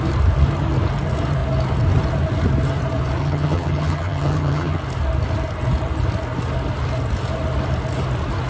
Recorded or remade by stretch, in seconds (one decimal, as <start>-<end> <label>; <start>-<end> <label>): 0.0-3.2 recorded; 3.2-4.8 remade; 4.8-8.5 recorded